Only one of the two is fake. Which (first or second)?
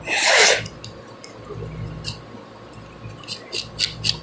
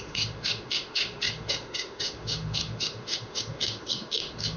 second